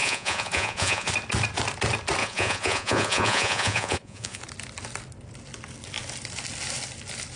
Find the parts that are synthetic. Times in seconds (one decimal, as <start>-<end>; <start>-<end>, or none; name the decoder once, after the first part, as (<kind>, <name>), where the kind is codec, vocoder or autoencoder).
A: 0.0-1.1 (vocoder, Vocos); 2.2-4.4